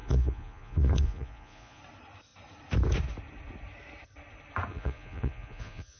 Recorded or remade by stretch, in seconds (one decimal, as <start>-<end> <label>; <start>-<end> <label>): 0.0-1.8 remade; 1.8-4.7 recorded; 4.7-6.0 remade